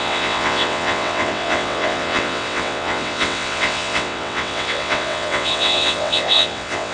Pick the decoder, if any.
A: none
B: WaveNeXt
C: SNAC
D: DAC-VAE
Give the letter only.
B